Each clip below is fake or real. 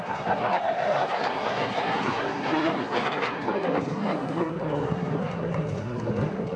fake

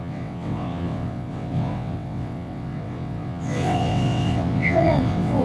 fake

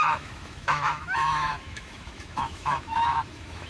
fake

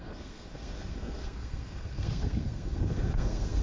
fake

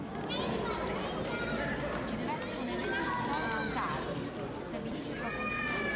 real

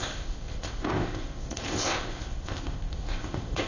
fake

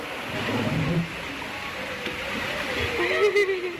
real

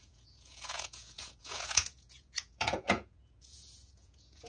fake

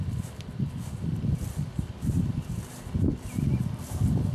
real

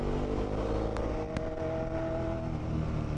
real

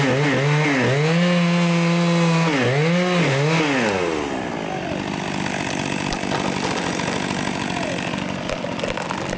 real